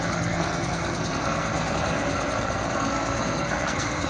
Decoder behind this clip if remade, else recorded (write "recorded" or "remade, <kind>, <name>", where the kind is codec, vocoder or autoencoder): remade, codec, SNAC